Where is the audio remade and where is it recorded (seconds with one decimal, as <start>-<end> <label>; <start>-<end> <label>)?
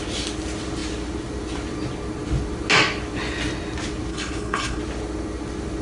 0.0-4.1 recorded; 4.1-4.8 remade; 4.8-5.8 recorded